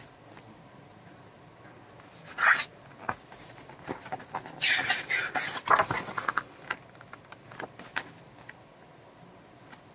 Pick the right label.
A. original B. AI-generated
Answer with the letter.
A